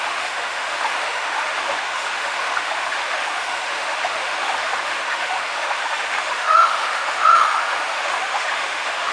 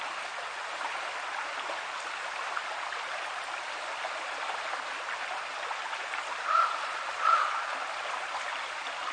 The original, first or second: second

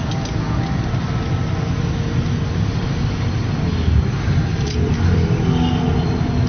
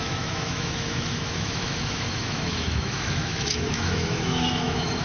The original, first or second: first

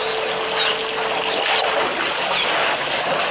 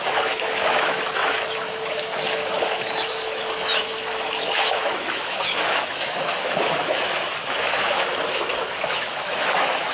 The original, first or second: first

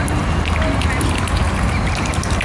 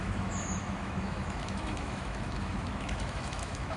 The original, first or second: first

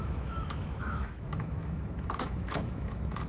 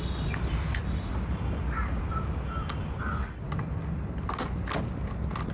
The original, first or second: second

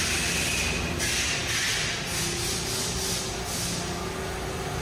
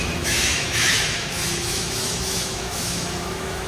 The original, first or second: first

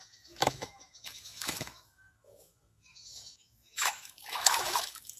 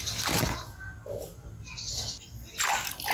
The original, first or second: second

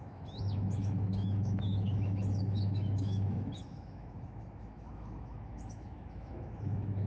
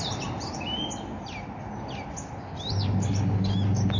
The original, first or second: second